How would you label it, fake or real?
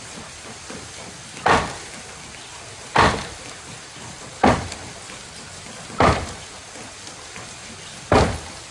real